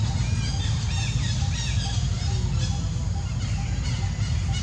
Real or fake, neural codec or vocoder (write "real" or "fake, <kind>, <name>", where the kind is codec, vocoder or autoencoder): real